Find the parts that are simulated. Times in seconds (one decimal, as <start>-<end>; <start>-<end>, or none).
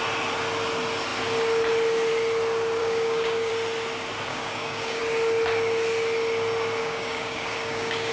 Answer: 2.8-3.5; 4.3-5.0; 6.8-8.1